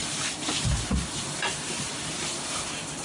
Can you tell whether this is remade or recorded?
recorded